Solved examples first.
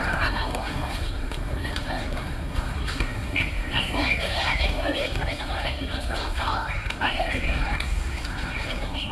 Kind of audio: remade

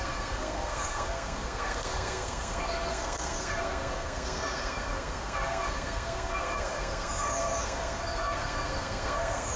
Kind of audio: remade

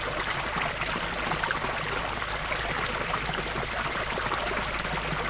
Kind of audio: recorded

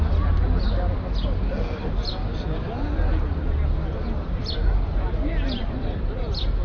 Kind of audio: recorded